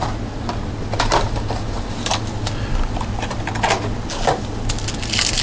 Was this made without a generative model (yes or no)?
yes